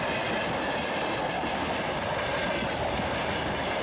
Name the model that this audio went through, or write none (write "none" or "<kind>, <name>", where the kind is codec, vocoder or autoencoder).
none